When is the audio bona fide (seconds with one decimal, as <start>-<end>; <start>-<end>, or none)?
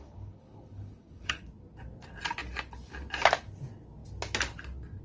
1.4-5.0